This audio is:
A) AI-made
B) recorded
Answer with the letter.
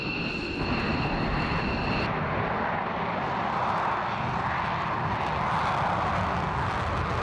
B